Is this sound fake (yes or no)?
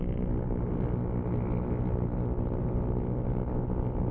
no